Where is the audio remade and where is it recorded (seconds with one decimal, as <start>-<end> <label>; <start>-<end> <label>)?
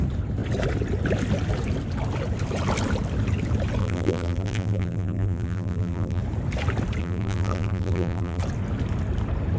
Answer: 0.0-3.8 recorded; 3.8-6.2 remade; 6.2-7.0 recorded; 7.0-8.4 remade; 8.4-9.6 recorded